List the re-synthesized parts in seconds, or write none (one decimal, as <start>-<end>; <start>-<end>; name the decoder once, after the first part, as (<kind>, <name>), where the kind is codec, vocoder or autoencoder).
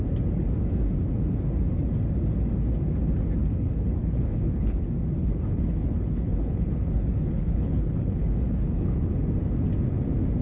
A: 3.4-4.8 (codec, HILCodec); 5.2-9.1